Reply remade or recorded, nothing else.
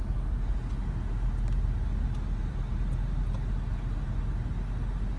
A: recorded